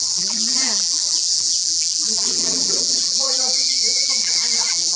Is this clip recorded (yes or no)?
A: no